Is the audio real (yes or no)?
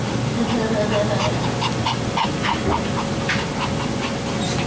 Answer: yes